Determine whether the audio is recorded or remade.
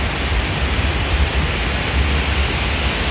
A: recorded